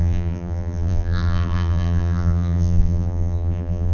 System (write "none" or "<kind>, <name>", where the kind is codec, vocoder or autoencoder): vocoder, BigVGAN v2